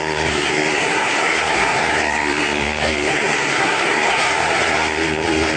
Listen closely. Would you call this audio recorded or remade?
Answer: remade